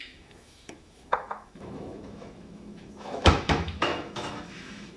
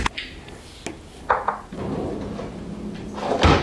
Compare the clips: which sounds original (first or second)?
second